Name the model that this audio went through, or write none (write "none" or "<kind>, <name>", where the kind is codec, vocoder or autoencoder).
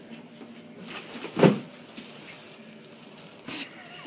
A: none